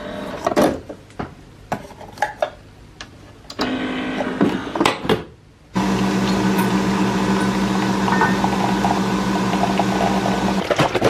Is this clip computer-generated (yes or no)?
no